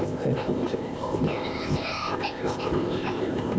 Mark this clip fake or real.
fake